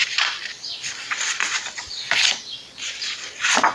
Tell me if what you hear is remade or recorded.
remade